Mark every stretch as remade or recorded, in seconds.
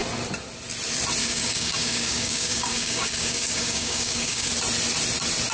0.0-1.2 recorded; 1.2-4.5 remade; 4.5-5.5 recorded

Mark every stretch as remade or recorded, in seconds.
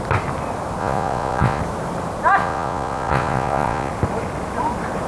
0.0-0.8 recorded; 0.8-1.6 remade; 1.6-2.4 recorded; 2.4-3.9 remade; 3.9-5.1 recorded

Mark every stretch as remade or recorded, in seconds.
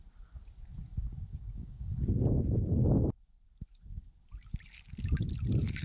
0.0-1.3 recorded; 1.3-1.9 remade; 1.9-5.8 recorded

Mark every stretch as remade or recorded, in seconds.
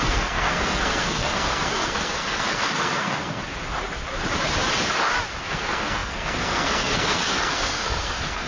0.0-3.4 remade; 3.4-5.4 recorded; 5.4-8.5 remade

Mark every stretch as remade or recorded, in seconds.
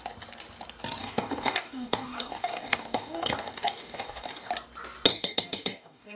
0.0-1.0 recorded; 1.0-4.5 remade; 4.5-5.1 recorded; 5.1-6.2 remade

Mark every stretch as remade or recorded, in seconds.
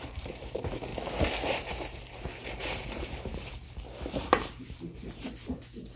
0.0-0.9 remade; 0.9-1.5 recorded; 1.5-3.6 remade; 3.6-4.2 recorded; 4.2-6.0 remade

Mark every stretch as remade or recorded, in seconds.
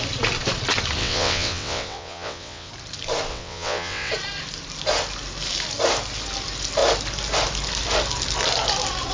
0.0-1.0 recorded; 1.0-2.7 remade; 2.7-3.3 recorded; 3.3-4.1 remade; 4.1-9.1 recorded